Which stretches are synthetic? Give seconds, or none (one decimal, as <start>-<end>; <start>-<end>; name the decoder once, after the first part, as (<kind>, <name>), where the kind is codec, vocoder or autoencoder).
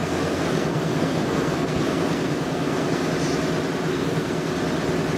0.0-3.1 (codec, SNAC); 3.9-4.5